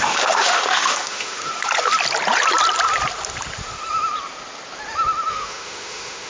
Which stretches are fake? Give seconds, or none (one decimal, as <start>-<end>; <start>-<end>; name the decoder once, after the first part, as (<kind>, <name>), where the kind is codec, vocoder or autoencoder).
0.0-1.5 (autoencoder, DAC-VAE); 5.3-6.3